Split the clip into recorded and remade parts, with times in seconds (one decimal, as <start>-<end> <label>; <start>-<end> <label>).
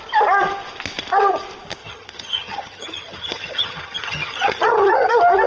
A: 0.0-1.8 recorded; 1.8-5.1 remade; 5.1-5.5 recorded